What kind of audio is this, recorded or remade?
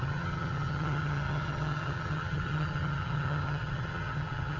remade